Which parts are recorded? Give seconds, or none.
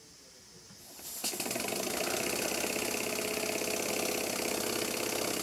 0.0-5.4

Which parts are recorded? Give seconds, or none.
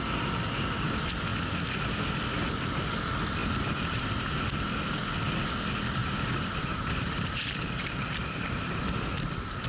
0.0-3.4; 4.1-6.0; 8.8-9.7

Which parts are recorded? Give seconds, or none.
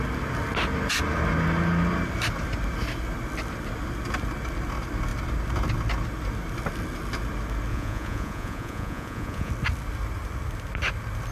0.0-7.7; 9.5-11.3